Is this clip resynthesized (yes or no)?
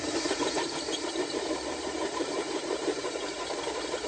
yes